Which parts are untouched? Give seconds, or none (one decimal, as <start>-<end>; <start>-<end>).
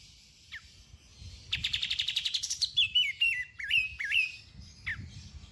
0.0-1.1; 4.4-4.9